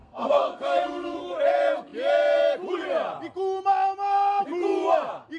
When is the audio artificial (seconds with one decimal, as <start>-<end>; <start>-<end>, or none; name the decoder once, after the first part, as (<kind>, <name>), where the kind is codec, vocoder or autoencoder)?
0.0-1.4 (codec, SNAC)